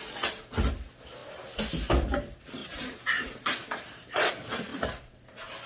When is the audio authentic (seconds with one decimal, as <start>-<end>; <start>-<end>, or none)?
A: 0.0-2.6; 4.3-5.7